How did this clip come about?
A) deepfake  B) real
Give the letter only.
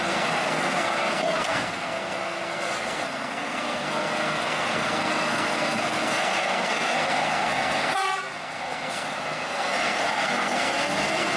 A